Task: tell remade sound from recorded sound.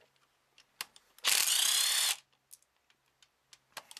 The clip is recorded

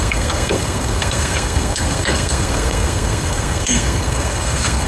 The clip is remade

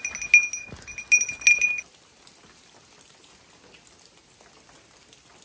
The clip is recorded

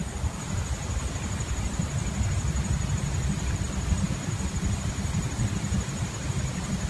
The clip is recorded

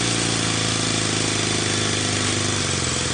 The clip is recorded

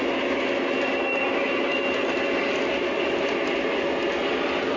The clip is recorded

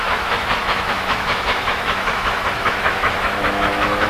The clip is remade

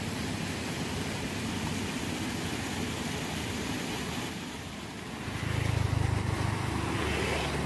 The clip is recorded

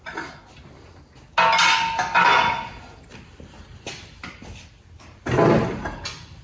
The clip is recorded